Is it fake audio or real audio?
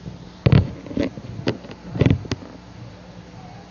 real